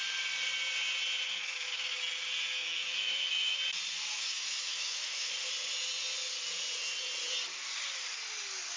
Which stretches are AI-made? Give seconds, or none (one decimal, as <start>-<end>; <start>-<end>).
1.3-2.0; 2.6-3.6; 4.1-5.3